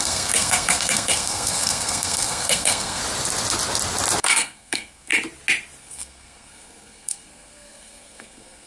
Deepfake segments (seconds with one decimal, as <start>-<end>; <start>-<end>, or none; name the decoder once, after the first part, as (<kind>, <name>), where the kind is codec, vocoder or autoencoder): 0.0-3.0 (codec, SNAC); 4.2-5.1; 5.8-8.7